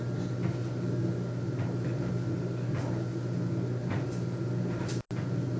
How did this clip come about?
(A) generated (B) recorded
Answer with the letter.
B